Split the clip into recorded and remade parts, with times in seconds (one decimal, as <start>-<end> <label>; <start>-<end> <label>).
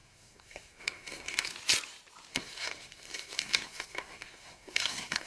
0.0-1.5 remade; 1.5-2.3 recorded; 2.3-5.3 remade